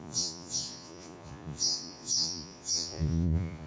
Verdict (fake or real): fake